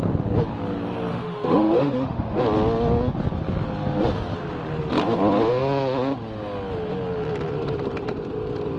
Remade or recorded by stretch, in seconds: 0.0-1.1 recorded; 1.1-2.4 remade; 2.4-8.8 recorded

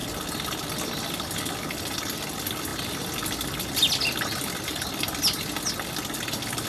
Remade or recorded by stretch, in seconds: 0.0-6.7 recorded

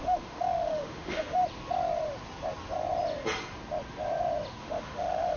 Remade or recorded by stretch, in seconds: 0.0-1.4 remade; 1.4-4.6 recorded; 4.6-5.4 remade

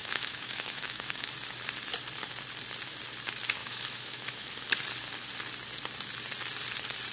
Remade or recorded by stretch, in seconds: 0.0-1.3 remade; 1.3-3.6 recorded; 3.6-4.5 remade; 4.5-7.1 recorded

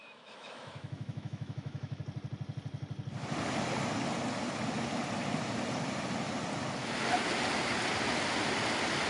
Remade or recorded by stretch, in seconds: 0.0-2.0 remade; 2.0-9.1 recorded